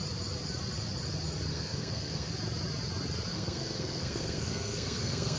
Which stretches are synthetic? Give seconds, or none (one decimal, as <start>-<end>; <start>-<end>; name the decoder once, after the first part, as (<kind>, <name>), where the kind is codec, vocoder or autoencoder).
1.5-2.3 (codec, SNAC); 3.3-5.4